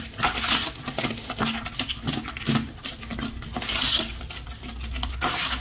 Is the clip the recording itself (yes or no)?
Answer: yes